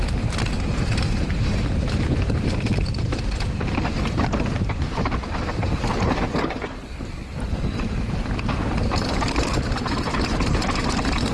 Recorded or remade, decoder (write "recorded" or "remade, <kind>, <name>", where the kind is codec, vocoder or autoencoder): remade, vocoder, BigVGAN v2